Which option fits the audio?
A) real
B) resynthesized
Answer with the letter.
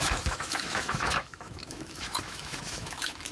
B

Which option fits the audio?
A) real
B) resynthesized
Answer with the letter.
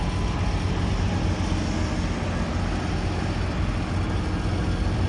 A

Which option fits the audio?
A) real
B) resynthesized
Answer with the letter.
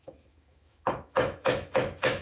B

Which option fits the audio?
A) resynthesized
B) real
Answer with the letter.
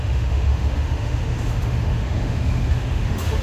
A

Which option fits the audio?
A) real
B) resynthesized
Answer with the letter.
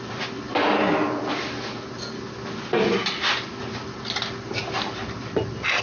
A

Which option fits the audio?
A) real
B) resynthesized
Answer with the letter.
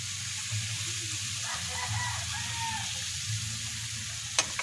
A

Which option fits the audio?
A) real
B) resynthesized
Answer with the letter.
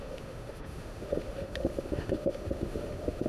B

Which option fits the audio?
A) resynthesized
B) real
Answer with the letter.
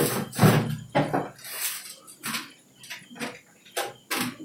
B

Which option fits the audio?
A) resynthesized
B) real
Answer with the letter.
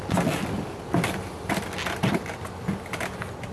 B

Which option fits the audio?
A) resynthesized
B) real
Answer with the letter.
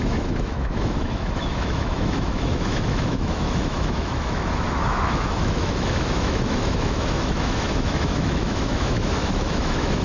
A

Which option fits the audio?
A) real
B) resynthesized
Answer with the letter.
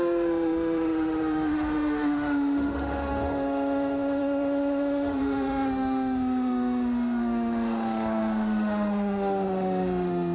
B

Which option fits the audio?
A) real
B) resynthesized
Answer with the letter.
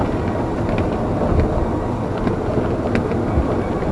A